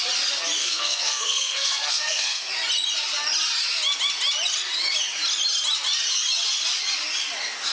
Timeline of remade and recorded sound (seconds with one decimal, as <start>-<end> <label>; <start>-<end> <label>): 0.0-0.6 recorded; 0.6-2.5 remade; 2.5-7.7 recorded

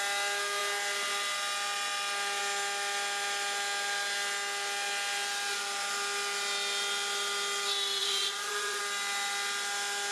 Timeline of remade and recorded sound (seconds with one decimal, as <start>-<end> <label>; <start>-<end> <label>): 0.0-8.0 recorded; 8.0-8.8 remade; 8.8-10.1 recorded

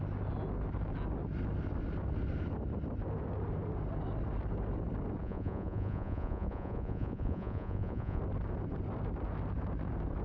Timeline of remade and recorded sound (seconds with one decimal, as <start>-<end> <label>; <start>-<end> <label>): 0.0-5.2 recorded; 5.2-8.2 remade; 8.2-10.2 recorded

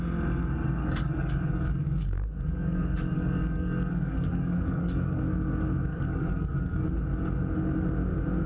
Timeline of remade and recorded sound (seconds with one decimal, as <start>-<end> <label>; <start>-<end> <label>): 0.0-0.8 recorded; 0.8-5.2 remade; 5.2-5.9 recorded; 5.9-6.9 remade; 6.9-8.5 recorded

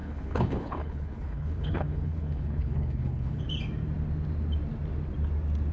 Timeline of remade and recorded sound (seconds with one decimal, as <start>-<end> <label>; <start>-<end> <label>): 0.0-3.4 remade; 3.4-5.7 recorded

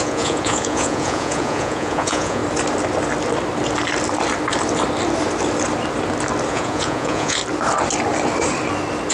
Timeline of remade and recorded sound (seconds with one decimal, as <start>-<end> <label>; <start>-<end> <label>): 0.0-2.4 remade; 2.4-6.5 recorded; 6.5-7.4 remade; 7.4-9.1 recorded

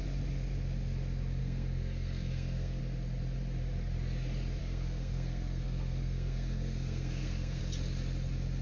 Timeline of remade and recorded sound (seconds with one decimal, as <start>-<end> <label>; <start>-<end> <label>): 0.0-1.4 recorded; 1.4-2.8 remade; 2.8-4.6 recorded; 4.6-7.6 remade; 7.6-8.6 recorded